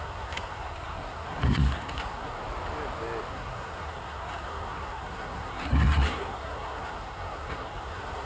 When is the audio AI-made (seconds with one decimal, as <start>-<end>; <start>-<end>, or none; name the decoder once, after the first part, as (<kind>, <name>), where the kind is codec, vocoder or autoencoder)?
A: 0.0-2.4 (codec, SNAC); 3.3-8.3